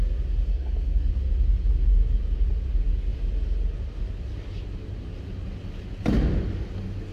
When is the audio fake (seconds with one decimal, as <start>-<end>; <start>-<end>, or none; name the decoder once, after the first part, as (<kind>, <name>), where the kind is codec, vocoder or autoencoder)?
0.5-1.1 (codec, SNAC)